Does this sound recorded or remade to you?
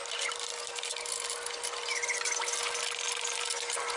recorded